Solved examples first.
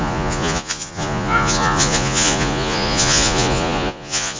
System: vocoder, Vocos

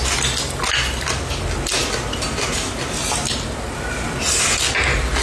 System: none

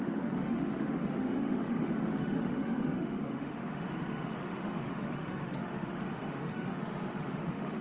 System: autoencoder, DAC-VAE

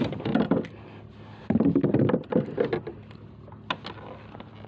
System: none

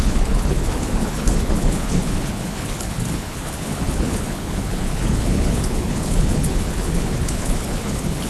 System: codec, HILCodec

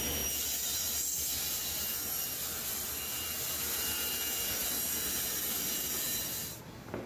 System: vocoder, BigVGAN v2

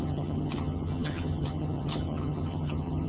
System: vocoder, HiFi-GAN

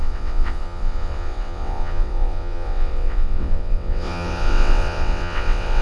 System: vocoder, WaveNeXt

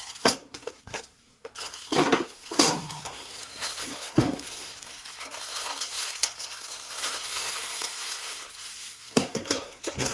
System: codec, SNAC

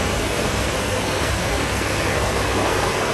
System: codec, SNAC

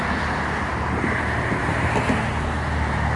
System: none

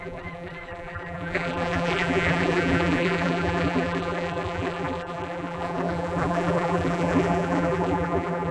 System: vocoder, BigVGAN v2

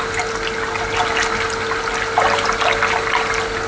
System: none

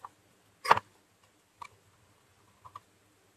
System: none